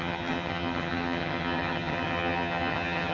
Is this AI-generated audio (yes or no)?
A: yes